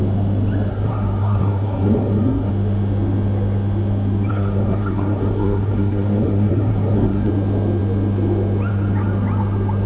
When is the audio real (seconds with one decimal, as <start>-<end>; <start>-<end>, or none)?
0.0-0.7; 2.5-4.3; 7.3-9.9